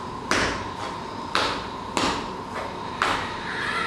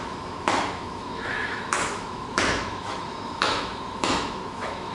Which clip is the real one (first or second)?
first